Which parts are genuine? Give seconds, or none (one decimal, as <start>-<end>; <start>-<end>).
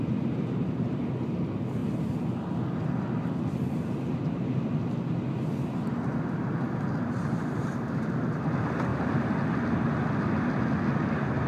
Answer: 0.0-11.5